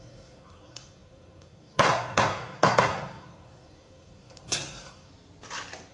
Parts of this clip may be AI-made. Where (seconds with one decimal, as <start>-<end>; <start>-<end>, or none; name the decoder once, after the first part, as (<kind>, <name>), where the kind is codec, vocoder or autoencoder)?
0.0-5.1 (codec, SNAC)